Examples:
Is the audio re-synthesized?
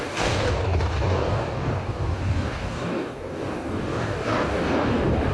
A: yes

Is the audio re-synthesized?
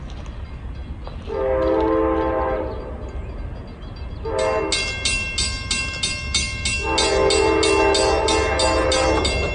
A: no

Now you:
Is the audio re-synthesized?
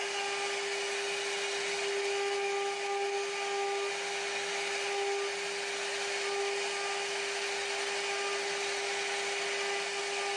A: no